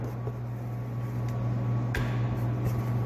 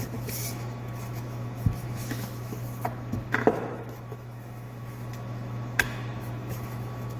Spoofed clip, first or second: second